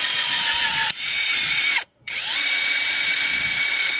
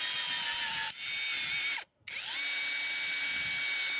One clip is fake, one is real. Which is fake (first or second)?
first